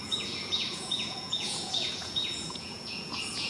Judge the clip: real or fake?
fake